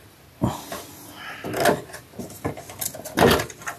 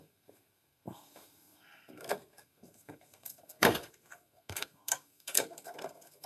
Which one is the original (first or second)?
first